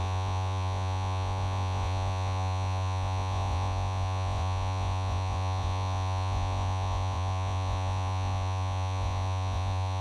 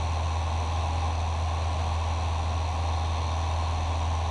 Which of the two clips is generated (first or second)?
first